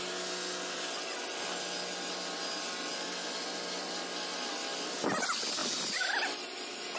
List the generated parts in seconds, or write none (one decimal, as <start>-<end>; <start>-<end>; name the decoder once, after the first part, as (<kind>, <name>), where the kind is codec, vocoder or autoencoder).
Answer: none